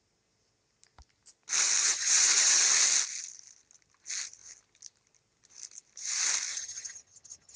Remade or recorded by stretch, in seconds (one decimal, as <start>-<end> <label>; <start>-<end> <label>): 0.0-1.8 recorded; 1.8-2.6 remade; 2.6-6.5 recorded; 6.5-7.6 remade